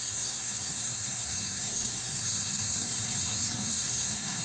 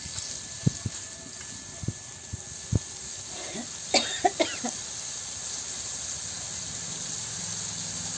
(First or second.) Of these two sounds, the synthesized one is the first